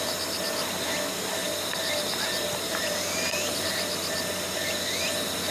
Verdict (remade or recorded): recorded